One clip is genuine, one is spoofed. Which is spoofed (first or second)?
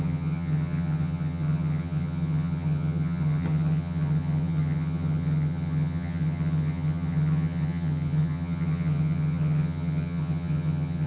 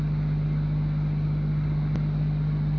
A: first